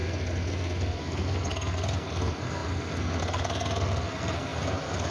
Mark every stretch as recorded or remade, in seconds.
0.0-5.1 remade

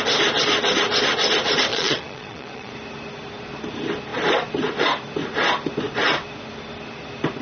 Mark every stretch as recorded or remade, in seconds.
0.0-1.7 recorded; 1.7-2.7 remade; 2.7-7.4 recorded

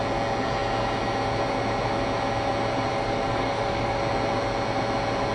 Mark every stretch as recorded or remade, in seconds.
0.0-2.9 recorded; 2.9-4.0 remade; 4.0-5.3 recorded

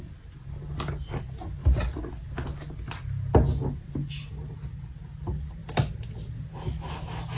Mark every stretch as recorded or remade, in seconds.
0.0-7.4 recorded